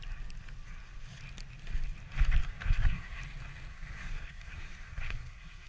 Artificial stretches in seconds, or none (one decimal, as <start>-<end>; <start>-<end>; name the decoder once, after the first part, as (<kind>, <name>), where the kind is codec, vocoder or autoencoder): 2.4-3.2 (codec, SNAC); 3.7-5.7